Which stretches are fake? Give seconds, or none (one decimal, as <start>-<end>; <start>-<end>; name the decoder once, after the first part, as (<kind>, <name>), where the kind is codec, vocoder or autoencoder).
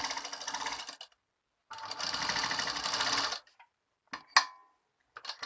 none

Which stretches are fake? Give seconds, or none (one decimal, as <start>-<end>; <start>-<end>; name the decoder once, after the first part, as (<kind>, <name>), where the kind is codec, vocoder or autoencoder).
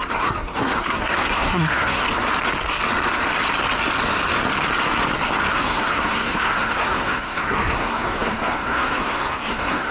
0.0-2.0 (codec, SNAC); 5.5-9.9